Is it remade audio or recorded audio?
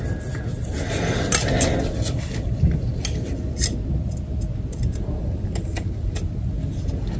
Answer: recorded